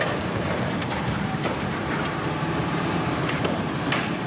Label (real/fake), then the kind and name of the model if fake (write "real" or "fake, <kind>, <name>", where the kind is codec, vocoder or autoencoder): fake, vocoder, BigVGAN v2